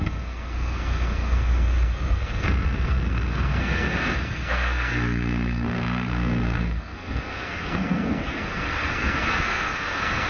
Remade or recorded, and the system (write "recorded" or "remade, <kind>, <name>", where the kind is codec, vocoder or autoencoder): remade, codec, SNAC